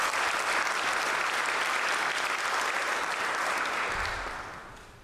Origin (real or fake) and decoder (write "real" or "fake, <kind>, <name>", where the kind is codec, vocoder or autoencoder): real